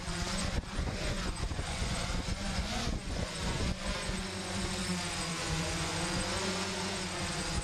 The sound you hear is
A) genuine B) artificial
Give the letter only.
B